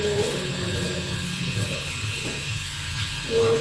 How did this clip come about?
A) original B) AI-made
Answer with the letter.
B